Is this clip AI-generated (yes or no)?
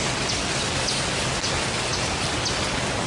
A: no